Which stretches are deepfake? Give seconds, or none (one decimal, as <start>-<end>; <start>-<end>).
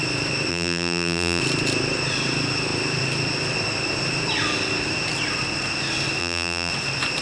0.5-1.4; 6.2-6.7